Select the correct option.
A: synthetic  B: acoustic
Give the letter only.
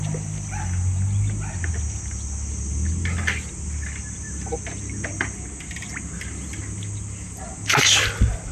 B